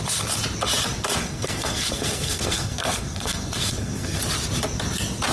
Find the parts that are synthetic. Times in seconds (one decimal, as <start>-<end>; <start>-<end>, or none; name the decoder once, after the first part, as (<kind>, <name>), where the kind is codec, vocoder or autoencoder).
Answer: 1.2-4.2 (codec, SNAC)